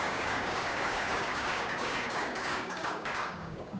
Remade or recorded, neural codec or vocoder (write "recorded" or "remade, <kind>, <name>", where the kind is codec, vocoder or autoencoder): remade, codec, DAC